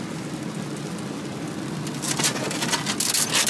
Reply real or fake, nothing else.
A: real